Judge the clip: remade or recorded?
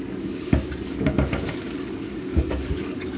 remade